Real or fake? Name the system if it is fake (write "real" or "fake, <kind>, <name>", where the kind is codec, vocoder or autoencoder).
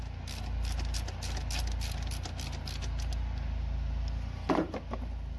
real